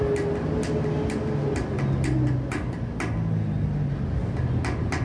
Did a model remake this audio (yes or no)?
no